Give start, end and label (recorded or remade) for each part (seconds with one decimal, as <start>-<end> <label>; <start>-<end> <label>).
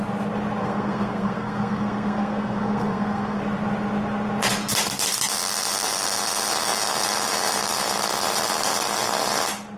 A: 0.0-0.6 recorded; 0.6-3.4 remade; 3.4-9.8 recorded